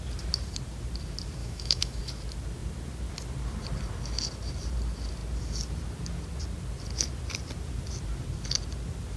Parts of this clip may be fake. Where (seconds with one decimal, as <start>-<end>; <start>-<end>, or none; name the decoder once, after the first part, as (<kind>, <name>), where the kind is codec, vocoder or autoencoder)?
1.4-2.0 (autoencoder, DAC-VAE)